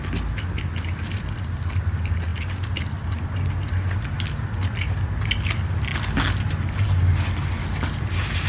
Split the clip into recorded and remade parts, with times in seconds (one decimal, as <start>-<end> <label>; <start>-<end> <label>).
0.0-8.5 recorded